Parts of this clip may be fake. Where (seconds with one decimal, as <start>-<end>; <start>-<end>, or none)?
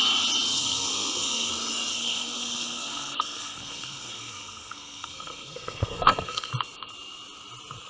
0.6-1.5; 1.9-6.5